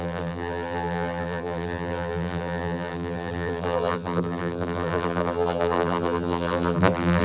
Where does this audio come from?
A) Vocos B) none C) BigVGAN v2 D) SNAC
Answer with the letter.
C